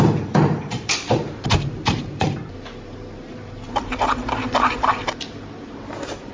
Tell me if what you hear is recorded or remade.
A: remade